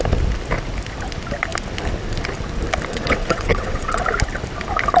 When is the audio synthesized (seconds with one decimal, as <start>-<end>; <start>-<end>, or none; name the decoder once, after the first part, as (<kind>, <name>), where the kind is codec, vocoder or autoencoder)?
2.9-4.0 (vocoder, WaveNeXt)